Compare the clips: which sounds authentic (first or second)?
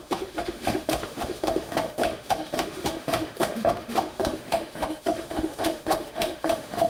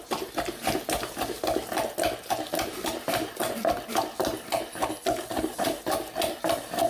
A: second